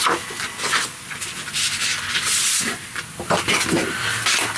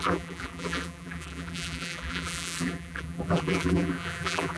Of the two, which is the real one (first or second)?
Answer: first